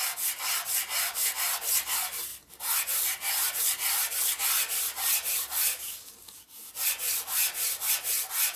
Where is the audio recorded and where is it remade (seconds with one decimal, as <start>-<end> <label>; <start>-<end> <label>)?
0.0-5.7 recorded; 5.7-6.7 remade; 6.7-8.6 recorded